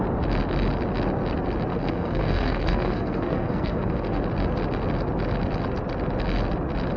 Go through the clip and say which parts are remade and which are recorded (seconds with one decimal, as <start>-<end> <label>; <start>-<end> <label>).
0.0-1.7 recorded; 1.7-4.2 remade; 4.2-7.0 recorded